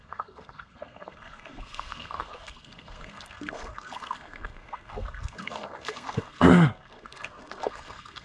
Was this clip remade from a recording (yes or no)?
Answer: yes